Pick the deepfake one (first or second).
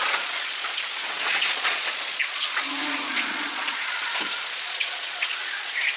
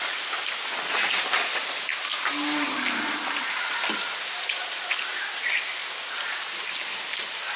first